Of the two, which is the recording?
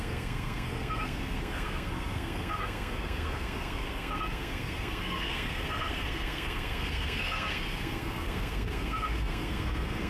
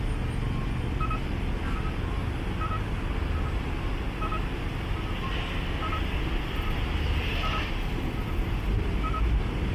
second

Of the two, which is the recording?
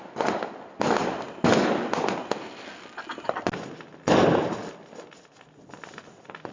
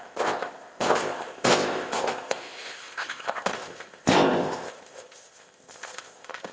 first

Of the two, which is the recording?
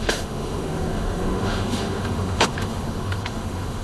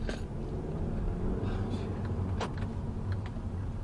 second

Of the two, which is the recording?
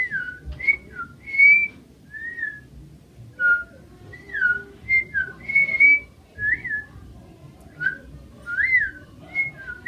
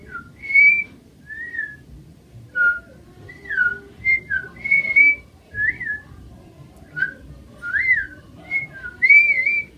first